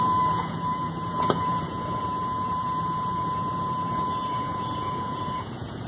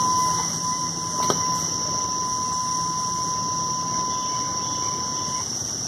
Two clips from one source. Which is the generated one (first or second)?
first